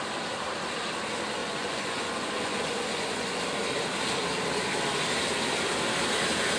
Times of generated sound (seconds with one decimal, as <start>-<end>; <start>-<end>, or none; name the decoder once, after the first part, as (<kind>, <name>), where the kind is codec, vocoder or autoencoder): 1.4-3.4 (vocoder, Vocos)